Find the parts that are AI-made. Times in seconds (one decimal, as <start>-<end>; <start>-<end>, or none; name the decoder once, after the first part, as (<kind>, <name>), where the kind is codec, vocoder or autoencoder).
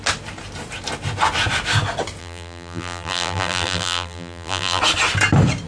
2.2-4.8 (vocoder, BigVGAN v2)